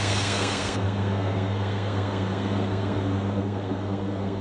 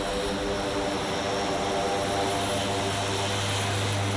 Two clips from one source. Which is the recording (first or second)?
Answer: second